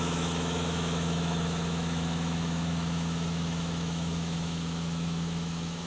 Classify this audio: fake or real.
fake